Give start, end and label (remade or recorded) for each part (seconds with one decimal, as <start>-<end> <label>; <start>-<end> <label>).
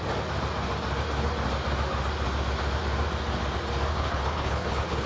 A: 0.0-3.9 recorded; 3.9-5.1 remade